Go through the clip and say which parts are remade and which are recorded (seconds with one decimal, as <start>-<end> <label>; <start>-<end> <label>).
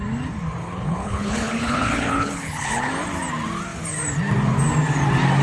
0.0-0.6 recorded; 0.6-2.9 remade; 2.9-5.4 recorded